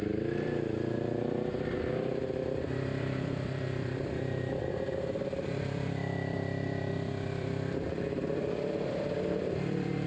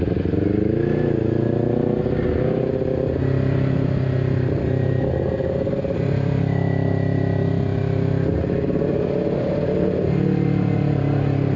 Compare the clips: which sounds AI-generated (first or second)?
first